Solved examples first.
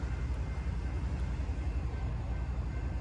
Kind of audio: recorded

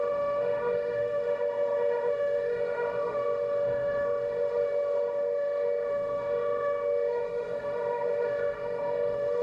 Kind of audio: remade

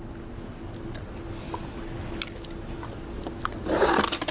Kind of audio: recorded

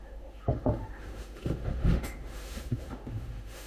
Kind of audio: remade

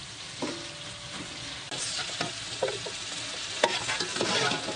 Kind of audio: recorded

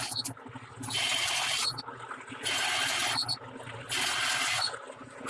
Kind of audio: recorded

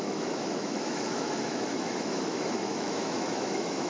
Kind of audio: remade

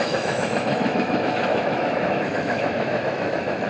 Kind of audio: remade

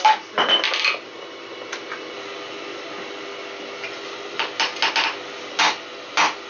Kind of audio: recorded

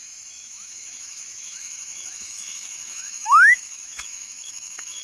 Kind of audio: remade